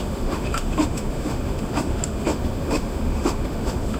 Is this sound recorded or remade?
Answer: remade